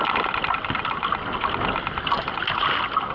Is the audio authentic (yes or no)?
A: yes